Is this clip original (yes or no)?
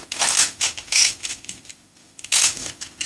no